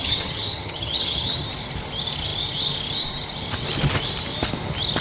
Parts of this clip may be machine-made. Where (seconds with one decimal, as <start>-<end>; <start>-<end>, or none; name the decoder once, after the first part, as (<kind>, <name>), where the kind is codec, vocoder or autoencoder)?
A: 0.0-1.4 (vocoder, HiFi-GAN)